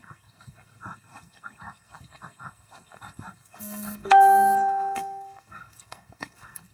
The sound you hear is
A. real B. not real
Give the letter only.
B